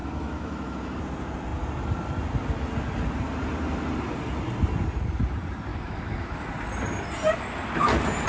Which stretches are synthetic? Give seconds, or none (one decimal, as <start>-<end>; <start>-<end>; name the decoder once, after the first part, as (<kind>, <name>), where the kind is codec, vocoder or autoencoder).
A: 0.0-1.0 (autoencoder, DAC-VAE); 5.7-6.5